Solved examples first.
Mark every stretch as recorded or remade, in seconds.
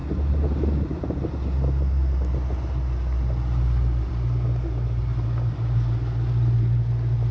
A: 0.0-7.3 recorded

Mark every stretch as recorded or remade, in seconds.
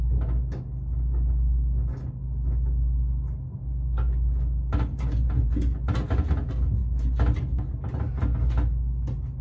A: 0.0-9.4 recorded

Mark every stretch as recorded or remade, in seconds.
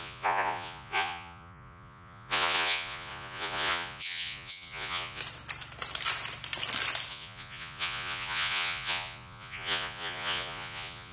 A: 0.0-5.2 remade; 5.2-7.1 recorded; 7.1-11.1 remade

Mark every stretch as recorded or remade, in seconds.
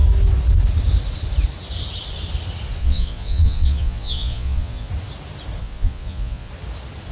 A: 0.0-2.8 recorded; 2.8-4.9 remade; 4.9-5.6 recorded; 5.6-6.5 remade; 6.5-7.1 recorded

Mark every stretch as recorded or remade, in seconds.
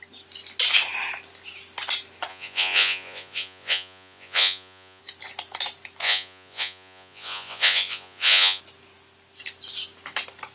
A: 0.0-2.3 recorded; 2.3-5.0 remade; 5.0-6.0 recorded; 6.0-8.6 remade; 8.6-10.5 recorded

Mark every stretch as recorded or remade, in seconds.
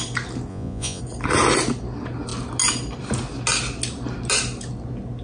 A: 0.0-0.5 recorded; 0.5-1.0 remade; 1.0-5.2 recorded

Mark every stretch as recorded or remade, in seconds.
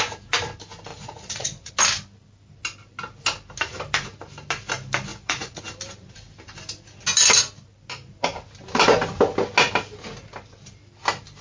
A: 0.0-0.9 recorded; 0.9-1.7 remade; 1.7-5.1 recorded; 5.1-5.6 remade; 5.6-11.4 recorded